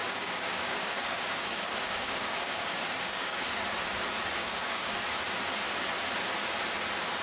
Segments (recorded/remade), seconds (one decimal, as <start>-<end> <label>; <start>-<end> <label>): 0.0-3.4 remade; 3.4-4.4 recorded; 4.4-4.9 remade; 4.9-7.2 recorded